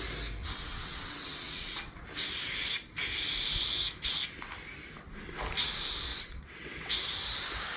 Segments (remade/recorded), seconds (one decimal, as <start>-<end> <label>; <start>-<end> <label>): 0.0-0.4 recorded; 0.4-2.0 remade; 2.0-6.1 recorded; 6.1-6.9 remade; 6.9-7.8 recorded